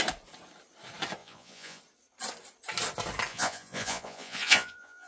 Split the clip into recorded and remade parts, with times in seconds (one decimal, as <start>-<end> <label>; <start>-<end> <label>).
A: 0.0-1.2 recorded; 1.2-1.8 remade; 1.8-3.3 recorded; 3.3-5.1 remade